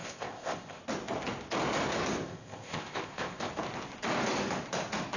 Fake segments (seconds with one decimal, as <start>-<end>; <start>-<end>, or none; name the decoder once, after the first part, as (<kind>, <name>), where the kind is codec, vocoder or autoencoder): 0.0-0.8 (codec, ZipCodec); 2.2-3.5